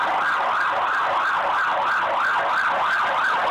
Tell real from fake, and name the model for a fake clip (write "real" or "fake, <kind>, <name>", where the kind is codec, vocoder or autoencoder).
real